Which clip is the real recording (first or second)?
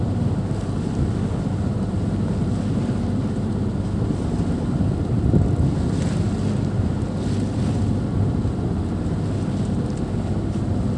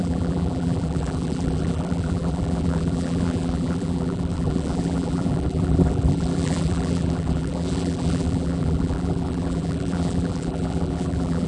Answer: first